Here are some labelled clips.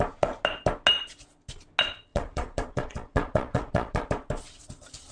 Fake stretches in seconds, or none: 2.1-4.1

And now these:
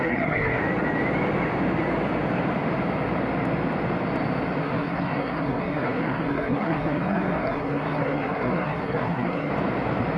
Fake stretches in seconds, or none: 0.0-0.6; 4.6-9.5

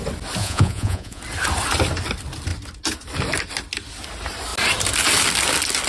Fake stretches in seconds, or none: 0.4-1.2